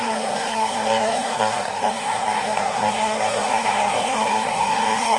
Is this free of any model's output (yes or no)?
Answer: no